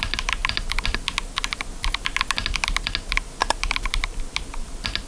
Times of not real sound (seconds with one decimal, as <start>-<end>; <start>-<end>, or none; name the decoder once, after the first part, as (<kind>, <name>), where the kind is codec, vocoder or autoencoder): 0.0-0.4 (vocoder, BigVGAN v2); 3.5-5.1